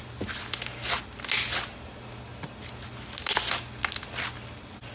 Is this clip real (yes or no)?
yes